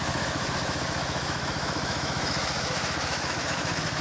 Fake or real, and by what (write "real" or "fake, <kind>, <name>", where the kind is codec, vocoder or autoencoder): fake, autoencoder, DAC-VAE